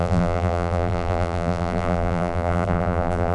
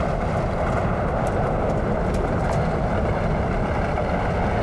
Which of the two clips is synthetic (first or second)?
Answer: first